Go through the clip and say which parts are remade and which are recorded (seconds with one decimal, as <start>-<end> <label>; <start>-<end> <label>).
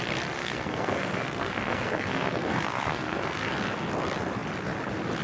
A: 0.0-0.4 recorded; 0.4-3.5 remade; 3.5-5.2 recorded